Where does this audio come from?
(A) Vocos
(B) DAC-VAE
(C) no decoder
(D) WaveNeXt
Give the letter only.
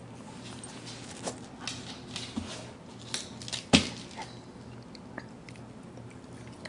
C